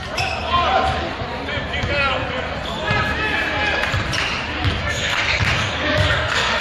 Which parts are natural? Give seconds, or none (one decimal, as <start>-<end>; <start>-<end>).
0.0-4.8